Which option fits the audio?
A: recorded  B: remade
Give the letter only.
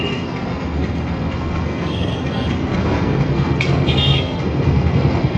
B